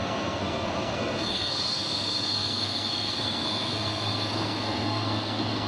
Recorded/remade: remade